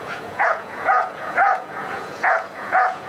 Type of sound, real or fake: fake